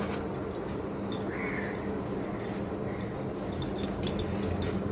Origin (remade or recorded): recorded